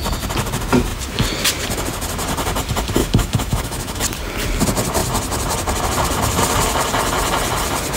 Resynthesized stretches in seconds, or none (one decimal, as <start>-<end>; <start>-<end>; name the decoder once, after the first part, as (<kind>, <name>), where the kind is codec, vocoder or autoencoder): 3.0-4.0 (autoencoder, DAC-VAE)